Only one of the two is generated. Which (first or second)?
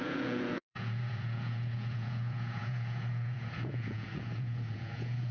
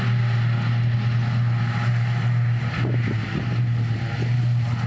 first